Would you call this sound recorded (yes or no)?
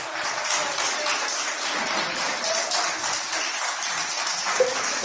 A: yes